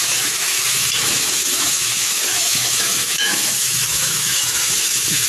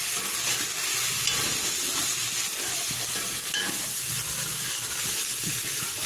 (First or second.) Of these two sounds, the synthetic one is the first